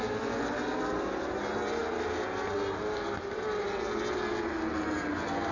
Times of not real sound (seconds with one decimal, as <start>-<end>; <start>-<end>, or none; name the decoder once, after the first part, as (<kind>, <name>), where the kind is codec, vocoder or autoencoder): none